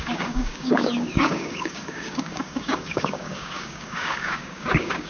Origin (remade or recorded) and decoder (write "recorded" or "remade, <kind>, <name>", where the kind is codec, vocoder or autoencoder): remade, codec, DAC